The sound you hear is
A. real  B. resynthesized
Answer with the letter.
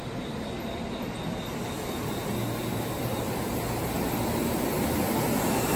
A